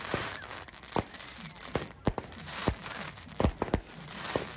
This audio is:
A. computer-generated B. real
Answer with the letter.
A